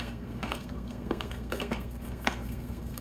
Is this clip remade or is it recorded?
remade